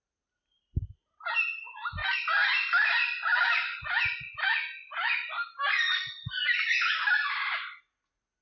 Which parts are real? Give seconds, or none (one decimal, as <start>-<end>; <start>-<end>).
0.0-8.4